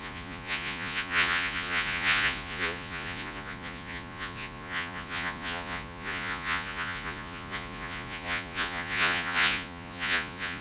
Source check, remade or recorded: remade